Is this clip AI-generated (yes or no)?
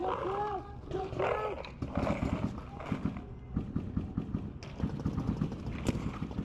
no